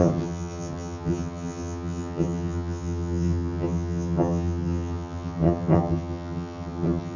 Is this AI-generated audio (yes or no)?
yes